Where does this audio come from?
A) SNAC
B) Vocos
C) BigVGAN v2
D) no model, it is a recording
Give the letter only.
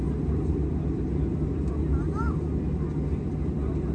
D